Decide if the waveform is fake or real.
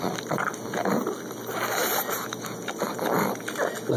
real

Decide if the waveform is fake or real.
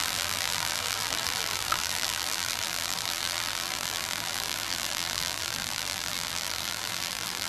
fake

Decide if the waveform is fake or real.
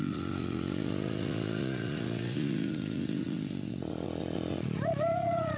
fake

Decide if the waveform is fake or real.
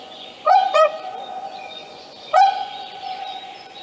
fake